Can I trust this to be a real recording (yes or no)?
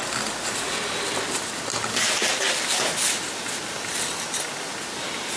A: yes